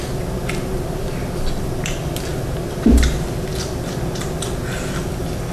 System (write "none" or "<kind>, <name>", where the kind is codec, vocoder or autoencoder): none